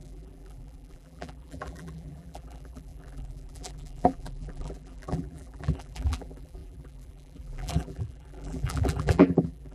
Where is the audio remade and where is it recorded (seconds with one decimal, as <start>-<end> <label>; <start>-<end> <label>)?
0.0-9.7 remade

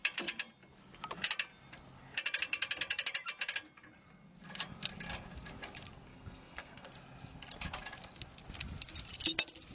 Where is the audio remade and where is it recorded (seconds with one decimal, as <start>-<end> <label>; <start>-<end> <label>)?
0.0-6.1 recorded; 6.1-6.9 remade; 6.9-9.7 recorded

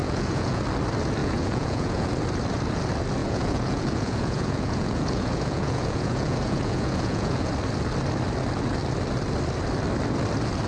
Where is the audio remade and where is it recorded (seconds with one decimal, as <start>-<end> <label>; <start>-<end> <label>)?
0.0-0.6 remade; 0.6-1.2 recorded; 1.2-2.1 remade; 2.1-3.2 recorded; 3.2-7.5 remade; 7.5-10.7 recorded

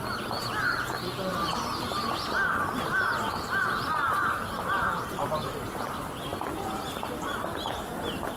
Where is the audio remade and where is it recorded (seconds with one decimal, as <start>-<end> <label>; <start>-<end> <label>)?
0.0-8.4 recorded

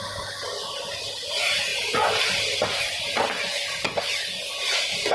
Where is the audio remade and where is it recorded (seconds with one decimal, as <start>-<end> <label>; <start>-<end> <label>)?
0.0-5.1 recorded

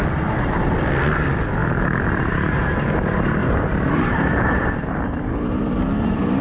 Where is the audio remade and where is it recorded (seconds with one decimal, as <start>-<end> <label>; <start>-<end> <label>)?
0.0-3.4 recorded; 3.4-4.9 remade; 4.9-6.4 recorded

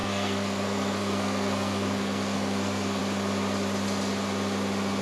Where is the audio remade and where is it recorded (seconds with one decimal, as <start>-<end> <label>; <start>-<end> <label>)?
0.0-3.0 remade; 3.0-5.0 recorded

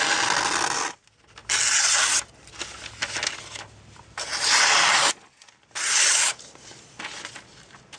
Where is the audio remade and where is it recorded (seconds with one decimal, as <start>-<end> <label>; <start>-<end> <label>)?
0.0-8.0 recorded